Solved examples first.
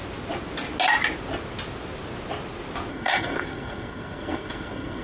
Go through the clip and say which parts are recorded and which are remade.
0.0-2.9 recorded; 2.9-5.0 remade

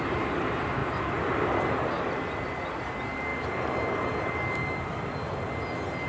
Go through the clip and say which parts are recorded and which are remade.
0.0-6.1 recorded

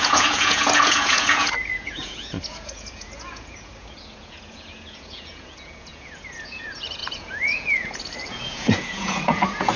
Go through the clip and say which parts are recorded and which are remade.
0.0-9.8 remade